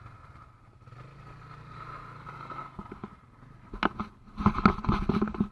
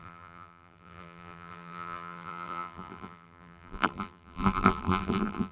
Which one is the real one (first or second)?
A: first